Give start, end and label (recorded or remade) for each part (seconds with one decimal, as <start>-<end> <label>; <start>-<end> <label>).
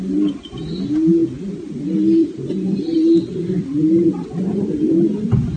0.0-5.6 recorded